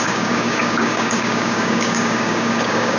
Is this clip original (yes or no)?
no